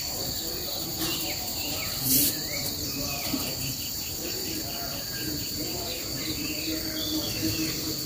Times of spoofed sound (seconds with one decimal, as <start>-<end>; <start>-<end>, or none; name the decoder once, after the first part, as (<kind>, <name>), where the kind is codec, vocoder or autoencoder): 0.9-5.8 (vocoder, BigVGAN v2)